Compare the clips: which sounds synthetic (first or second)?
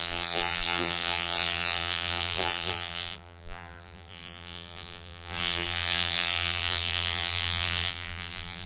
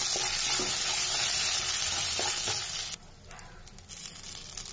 first